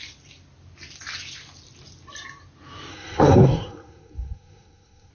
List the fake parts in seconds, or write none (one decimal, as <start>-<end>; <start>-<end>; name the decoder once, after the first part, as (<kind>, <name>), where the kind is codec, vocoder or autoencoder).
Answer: 2.9-5.1 (codec, SNAC)